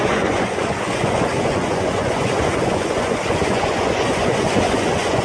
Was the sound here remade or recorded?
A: remade